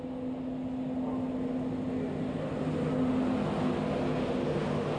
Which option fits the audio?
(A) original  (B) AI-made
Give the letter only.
A